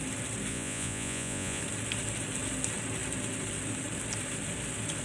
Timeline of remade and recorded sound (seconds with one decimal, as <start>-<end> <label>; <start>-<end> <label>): 0.0-0.5 recorded; 0.5-1.6 remade; 1.6-5.0 recorded